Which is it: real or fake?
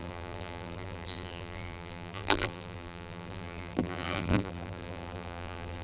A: fake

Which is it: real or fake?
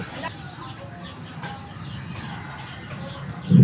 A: real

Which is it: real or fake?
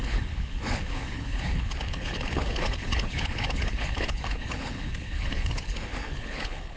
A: fake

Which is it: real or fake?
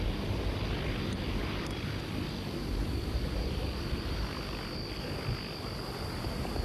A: real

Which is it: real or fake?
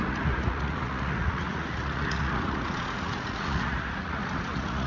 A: fake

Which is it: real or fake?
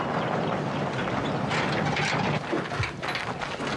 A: real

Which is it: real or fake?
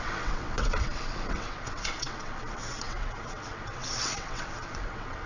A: fake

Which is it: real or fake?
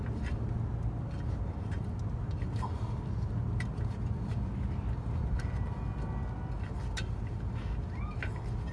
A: real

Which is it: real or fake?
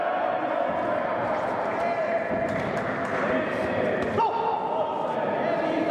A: real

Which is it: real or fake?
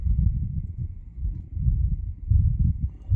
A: fake